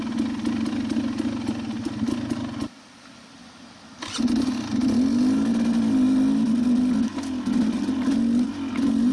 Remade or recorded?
recorded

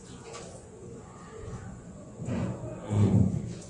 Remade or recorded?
remade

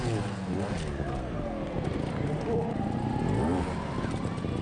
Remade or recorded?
recorded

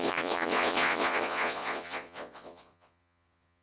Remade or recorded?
remade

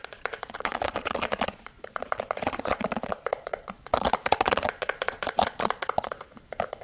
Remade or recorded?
remade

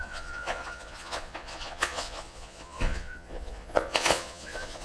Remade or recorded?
remade